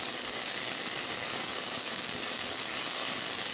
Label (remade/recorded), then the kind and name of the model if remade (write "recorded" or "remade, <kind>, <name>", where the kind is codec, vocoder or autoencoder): remade, codec, DAC